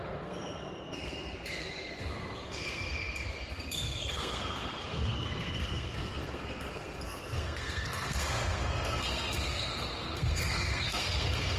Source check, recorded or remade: remade